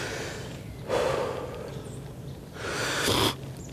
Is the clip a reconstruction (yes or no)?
no